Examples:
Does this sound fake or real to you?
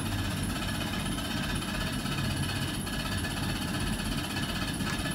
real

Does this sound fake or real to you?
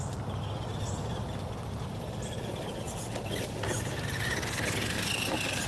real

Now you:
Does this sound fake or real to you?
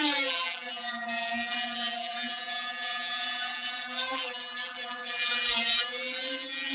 fake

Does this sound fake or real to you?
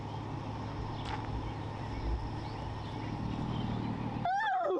real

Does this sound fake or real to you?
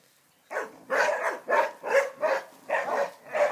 real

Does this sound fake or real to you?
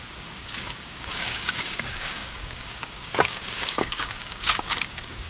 fake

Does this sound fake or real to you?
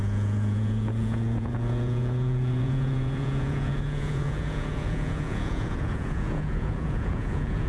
fake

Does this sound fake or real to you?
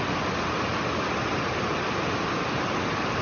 real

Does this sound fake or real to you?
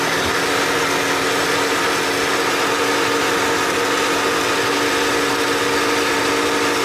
real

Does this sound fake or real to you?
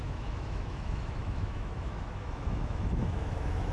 fake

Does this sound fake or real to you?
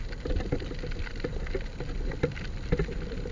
real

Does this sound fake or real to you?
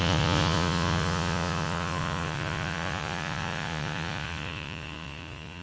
fake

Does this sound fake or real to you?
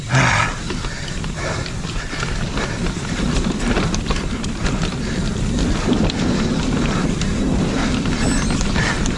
real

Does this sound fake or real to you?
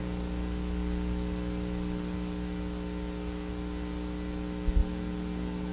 real